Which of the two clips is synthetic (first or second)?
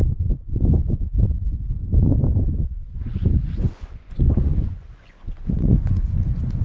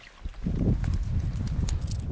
first